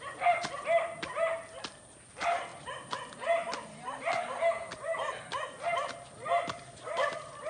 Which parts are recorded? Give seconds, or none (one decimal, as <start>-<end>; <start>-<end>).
0.0-7.5